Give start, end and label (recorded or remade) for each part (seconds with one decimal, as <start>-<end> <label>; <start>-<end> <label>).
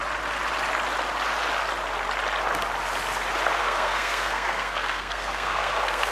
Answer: 0.0-3.6 recorded; 3.6-6.1 remade